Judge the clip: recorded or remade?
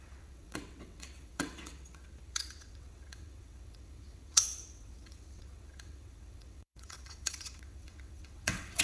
remade